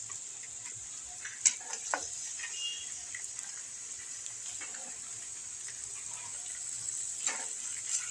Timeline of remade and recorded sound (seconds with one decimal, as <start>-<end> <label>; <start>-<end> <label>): 0.0-8.1 recorded